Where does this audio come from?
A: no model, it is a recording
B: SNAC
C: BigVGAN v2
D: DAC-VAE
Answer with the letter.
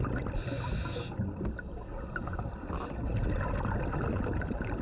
A